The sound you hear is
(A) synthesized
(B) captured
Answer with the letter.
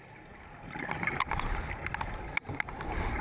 B